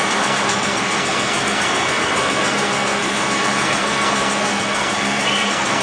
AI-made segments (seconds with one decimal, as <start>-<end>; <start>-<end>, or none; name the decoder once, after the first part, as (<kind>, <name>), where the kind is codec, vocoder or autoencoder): 0.0-5.8 (codec, SNAC)